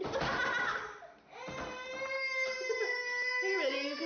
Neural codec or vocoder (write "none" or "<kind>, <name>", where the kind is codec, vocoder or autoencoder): none